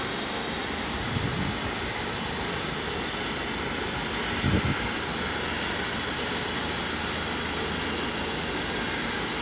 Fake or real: real